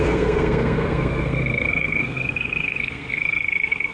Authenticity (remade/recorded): remade